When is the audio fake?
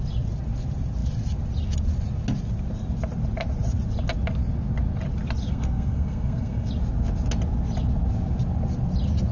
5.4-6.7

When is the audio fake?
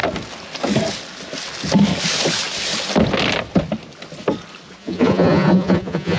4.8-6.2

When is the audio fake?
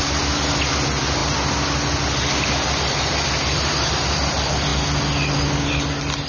none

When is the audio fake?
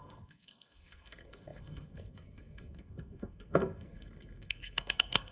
0.0-5.3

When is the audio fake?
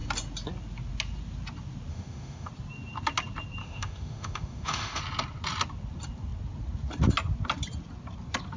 1.9-2.5; 3.6-5.0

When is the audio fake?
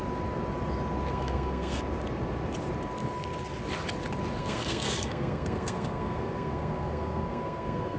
1.1-1.8; 4.4-8.0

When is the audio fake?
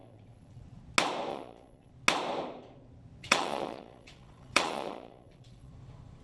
0.0-0.8; 1.3-1.9; 3.2-5.7